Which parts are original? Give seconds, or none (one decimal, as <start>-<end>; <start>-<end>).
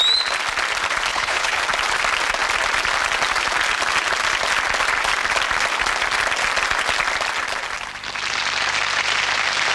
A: 0.0-1.1; 1.6-9.7